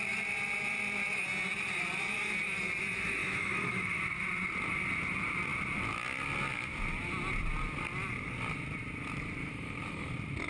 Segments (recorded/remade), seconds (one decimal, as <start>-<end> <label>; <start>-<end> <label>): 0.0-3.2 recorded; 3.2-4.0 remade; 4.0-9.4 recorded; 9.4-10.1 remade; 10.1-10.5 recorded